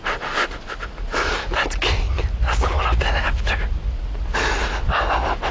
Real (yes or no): yes